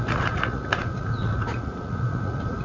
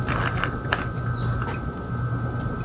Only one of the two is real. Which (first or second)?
second